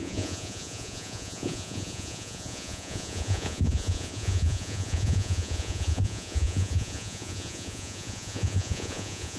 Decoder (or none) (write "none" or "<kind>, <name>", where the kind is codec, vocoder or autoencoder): vocoder, Vocos